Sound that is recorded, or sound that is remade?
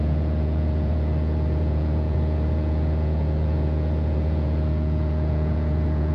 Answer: remade